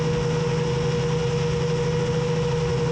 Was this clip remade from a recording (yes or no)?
no